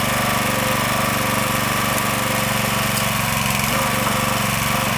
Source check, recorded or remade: recorded